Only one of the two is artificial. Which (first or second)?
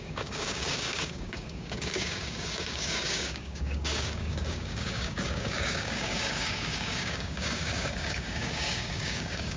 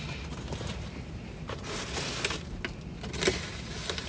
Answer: first